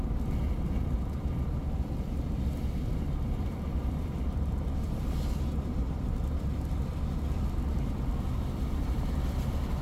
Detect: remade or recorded remade